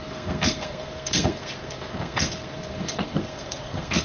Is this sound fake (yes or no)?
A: yes